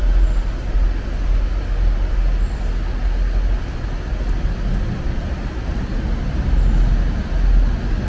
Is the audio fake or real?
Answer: real